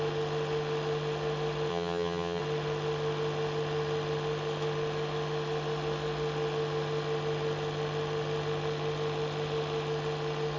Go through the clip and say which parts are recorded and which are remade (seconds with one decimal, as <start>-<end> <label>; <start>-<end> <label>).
0.0-1.7 recorded; 1.7-2.4 remade; 2.4-10.6 recorded